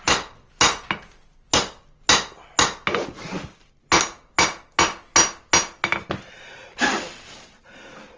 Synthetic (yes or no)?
no